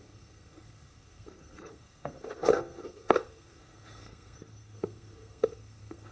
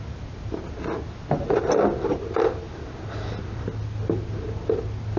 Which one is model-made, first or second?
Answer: first